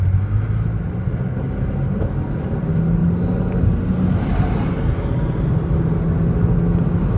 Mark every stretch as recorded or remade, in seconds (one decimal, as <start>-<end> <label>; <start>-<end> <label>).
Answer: 0.0-7.2 recorded